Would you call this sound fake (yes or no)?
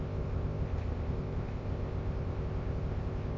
yes